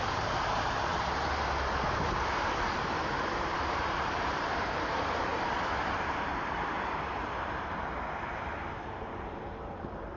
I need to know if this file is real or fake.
fake